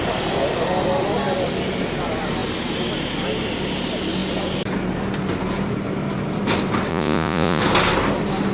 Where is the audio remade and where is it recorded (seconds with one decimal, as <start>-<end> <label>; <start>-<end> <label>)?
0.0-6.9 recorded; 6.9-7.6 remade; 7.6-8.5 recorded